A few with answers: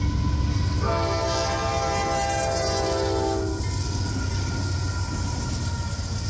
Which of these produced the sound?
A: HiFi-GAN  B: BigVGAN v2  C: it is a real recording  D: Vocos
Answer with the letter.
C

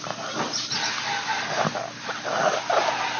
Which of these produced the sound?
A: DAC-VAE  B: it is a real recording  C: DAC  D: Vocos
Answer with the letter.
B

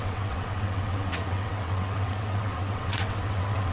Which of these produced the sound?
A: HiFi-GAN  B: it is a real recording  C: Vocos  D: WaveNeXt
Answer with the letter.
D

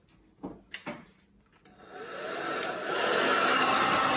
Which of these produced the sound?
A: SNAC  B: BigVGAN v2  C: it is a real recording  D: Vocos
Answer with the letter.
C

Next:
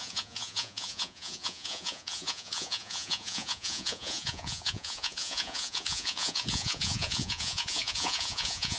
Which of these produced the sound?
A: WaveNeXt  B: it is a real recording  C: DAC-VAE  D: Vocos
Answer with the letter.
D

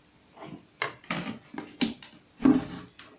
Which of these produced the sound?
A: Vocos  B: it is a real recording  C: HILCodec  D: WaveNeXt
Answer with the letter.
B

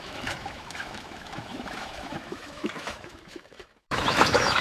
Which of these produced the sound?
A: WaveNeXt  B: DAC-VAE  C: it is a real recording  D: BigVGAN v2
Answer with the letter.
B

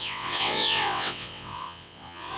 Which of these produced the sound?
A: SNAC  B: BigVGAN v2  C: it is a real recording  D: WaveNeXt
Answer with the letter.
D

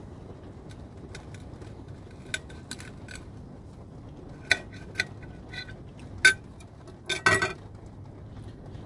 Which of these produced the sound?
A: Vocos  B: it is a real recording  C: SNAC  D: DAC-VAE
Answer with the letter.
B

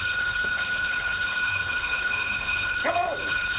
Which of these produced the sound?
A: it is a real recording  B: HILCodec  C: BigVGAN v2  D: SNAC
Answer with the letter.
B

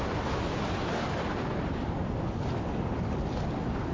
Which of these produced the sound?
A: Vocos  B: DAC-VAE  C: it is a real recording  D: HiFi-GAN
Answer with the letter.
C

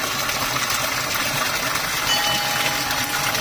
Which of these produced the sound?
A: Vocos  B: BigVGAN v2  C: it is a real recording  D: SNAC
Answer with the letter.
C